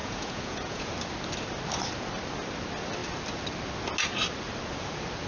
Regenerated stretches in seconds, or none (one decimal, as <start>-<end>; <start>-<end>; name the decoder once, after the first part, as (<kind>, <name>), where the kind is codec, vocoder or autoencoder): 0.0-0.9 (vocoder, Vocos)